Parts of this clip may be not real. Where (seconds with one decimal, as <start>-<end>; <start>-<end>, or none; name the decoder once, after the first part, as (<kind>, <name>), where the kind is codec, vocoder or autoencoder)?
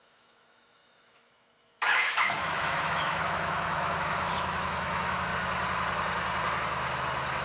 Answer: 0.0-5.3 (autoencoder, DAC-VAE)